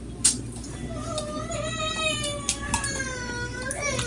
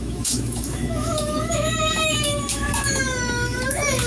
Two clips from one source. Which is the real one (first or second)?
first